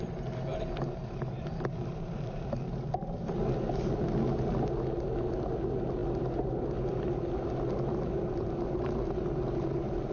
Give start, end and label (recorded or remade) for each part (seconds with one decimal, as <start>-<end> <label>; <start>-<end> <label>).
0.0-0.5 recorded; 0.5-2.9 remade; 2.9-10.1 recorded